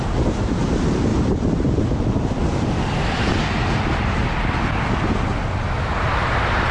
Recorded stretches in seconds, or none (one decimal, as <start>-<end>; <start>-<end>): 4.2-6.0